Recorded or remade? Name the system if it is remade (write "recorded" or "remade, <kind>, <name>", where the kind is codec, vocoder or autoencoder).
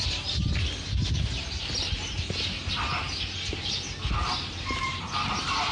recorded